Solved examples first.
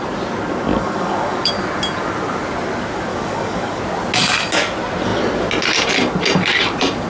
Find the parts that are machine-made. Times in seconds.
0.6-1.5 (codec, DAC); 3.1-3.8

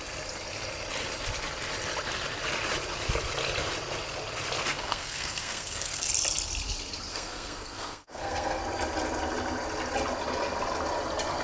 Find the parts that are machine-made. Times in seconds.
4.7-6.1 (codec, SNAC); 7.1-8.6